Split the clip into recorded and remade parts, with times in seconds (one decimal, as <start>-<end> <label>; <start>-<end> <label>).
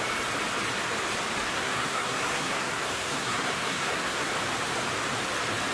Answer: 0.0-1.5 recorded; 1.5-4.3 remade; 4.3-5.7 recorded